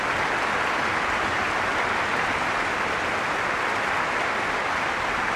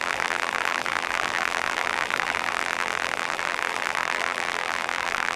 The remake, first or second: second